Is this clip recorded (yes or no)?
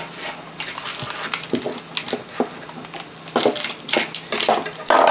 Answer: yes